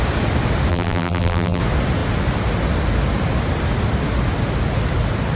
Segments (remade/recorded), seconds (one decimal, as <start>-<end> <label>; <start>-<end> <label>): 0.0-0.7 recorded; 0.7-1.6 remade; 1.6-5.3 recorded